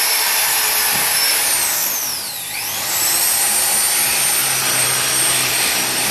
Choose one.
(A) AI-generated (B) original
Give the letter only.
B